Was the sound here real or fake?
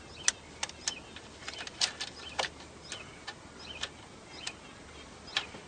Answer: real